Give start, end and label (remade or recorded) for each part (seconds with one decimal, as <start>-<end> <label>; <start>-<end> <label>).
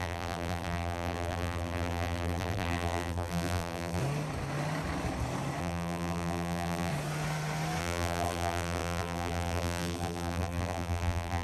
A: 0.0-4.0 remade; 4.0-5.6 recorded; 5.6-6.9 remade; 6.9-7.8 recorded; 7.8-11.4 remade